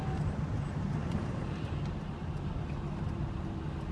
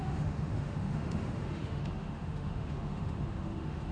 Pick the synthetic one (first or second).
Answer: second